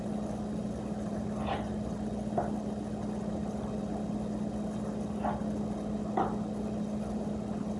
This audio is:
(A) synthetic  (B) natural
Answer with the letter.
B